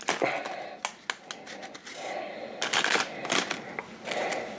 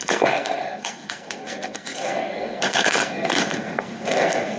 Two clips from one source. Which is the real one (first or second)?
first